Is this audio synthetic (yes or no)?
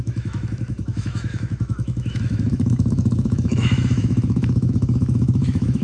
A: yes